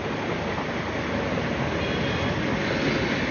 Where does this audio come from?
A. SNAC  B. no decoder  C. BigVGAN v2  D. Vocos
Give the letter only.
B